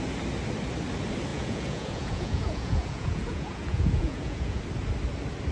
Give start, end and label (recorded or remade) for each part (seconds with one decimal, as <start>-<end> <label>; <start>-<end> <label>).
0.0-1.3 recorded; 1.3-4.6 remade; 4.6-5.5 recorded